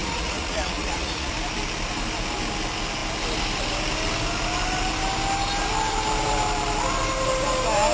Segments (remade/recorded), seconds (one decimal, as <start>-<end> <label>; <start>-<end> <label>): 0.0-1.3 remade; 1.3-7.9 recorded